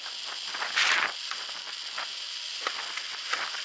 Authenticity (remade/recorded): recorded